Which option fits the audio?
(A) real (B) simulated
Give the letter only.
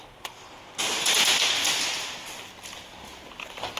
A